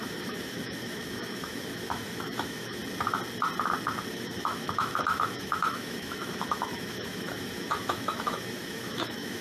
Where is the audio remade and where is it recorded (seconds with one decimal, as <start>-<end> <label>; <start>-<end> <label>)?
0.0-2.8 remade; 2.8-4.1 recorded; 4.1-9.4 remade